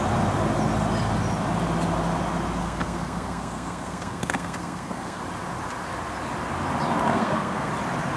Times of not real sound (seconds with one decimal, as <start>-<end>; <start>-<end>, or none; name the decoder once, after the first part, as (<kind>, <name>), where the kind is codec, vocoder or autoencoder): 2.6-5.2 (codec, SNAC); 7.1-7.7